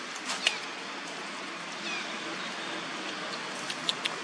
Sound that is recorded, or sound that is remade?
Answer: recorded